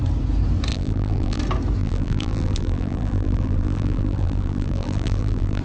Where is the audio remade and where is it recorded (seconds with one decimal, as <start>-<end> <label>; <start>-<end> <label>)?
0.0-0.7 recorded; 0.7-1.4 remade; 1.4-1.8 recorded; 1.8-5.6 remade